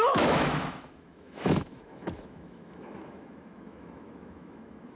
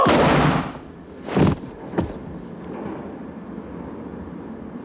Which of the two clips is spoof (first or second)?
first